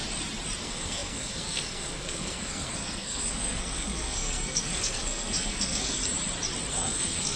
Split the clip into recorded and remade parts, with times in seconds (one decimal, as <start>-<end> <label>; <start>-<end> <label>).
0.0-0.6 recorded; 0.6-6.0 remade; 6.0-6.7 recorded; 6.7-7.4 remade